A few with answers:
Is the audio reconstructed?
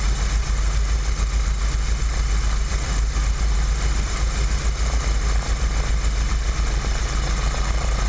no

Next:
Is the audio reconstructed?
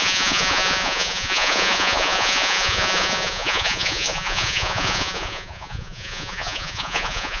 yes